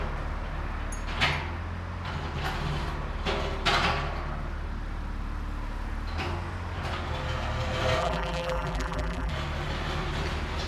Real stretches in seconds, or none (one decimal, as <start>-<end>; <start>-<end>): 0.0-8.0; 9.3-10.7